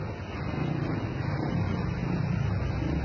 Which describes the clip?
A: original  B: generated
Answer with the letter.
A